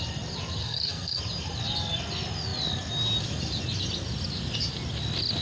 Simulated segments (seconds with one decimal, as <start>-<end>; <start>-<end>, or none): 0.6-1.2